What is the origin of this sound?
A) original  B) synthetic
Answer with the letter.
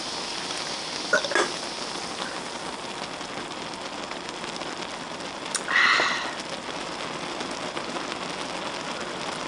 A